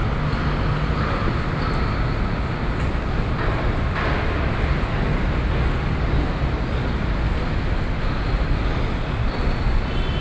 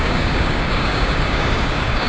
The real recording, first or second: first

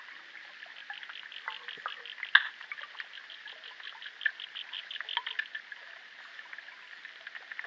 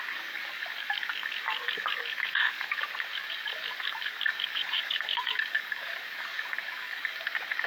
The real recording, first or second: first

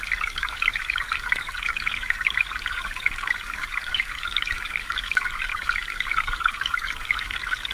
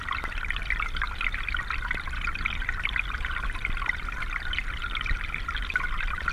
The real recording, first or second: second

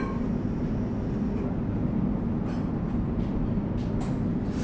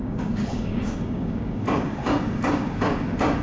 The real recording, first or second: first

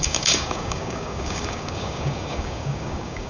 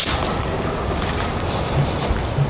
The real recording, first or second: second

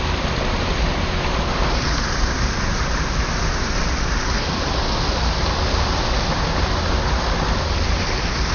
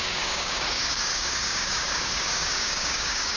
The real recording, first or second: first